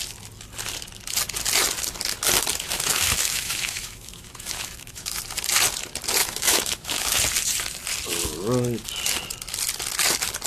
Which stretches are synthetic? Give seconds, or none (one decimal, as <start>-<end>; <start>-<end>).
2.5-5.2; 6.2-7.2